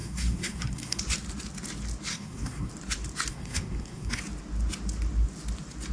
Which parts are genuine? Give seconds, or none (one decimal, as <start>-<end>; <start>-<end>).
1.0-2.1; 2.7-3.3; 4.2-5.9